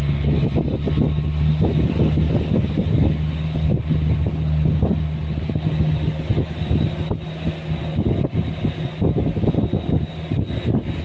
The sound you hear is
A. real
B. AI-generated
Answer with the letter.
A